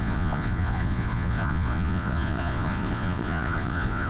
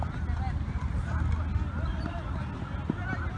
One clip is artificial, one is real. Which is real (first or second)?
second